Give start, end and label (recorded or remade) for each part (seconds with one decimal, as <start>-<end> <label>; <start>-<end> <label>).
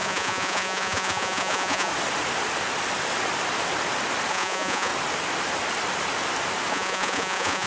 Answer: 0.0-1.9 remade; 1.9-4.3 recorded; 4.3-4.9 remade; 4.9-6.7 recorded; 6.7-7.7 remade